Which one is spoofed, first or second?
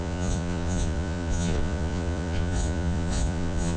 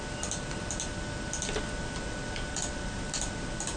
first